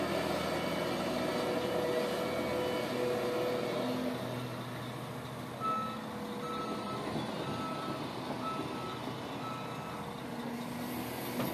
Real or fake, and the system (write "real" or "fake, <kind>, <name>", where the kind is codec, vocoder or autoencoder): real